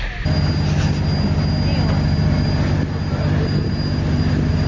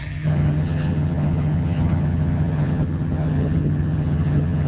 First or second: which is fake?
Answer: second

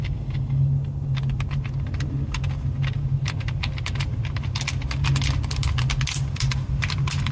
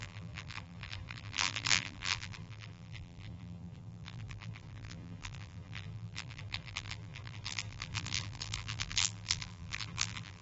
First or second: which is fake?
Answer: second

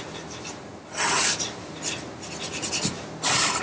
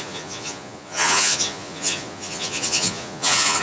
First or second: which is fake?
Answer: second